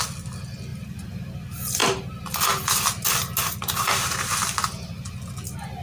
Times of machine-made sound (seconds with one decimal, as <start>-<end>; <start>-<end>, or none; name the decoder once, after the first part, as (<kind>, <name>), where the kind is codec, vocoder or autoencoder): 0.7-1.2 (vocoder, BigVGAN v2)